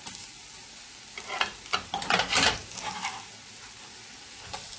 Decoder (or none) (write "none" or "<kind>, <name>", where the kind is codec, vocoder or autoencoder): none